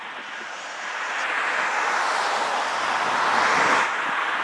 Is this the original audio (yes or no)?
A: yes